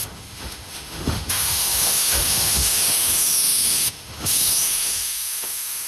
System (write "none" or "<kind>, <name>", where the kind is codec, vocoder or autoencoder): autoencoder, DAC-VAE